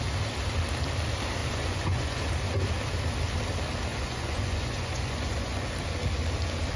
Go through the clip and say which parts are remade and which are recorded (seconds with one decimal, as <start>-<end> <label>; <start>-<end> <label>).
0.0-1.4 recorded; 1.4-2.3 remade; 2.3-3.9 recorded; 3.9-5.7 remade; 5.7-6.8 recorded